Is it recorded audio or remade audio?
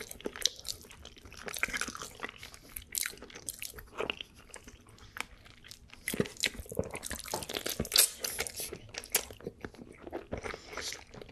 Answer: recorded